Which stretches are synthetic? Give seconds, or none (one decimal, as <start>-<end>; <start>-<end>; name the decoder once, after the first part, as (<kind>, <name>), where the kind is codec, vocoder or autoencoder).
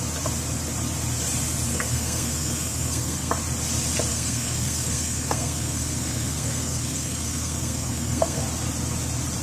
1.7-3.3 (codec, SNAC); 4.1-8.4